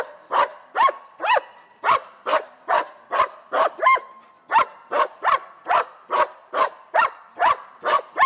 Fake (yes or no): yes